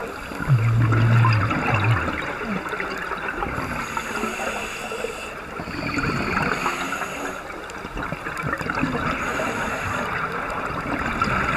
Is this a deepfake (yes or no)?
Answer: no